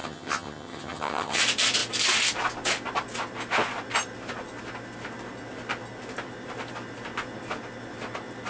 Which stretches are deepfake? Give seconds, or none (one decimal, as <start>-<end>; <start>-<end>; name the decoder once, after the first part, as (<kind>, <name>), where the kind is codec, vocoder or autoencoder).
0.0-1.4 (vocoder, HiFi-GAN)